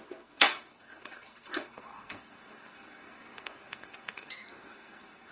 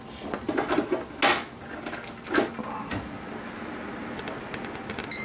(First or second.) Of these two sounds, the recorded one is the second